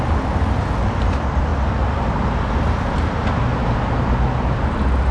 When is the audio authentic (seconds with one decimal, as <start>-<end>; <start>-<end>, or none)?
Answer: 0.0-5.1